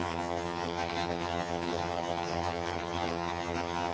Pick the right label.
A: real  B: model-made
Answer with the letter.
B